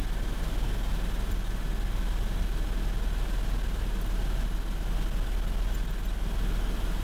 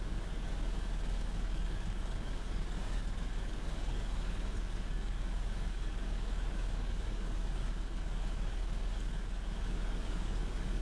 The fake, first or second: second